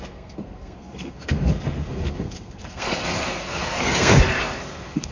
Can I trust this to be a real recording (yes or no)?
no